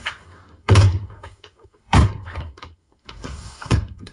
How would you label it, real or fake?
fake